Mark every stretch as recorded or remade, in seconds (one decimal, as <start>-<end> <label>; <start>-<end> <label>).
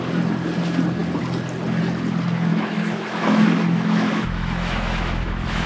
0.0-2.5 recorded; 2.5-5.7 remade